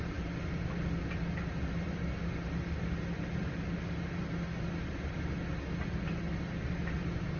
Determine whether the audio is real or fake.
real